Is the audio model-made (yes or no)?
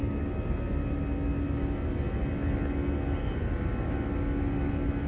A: no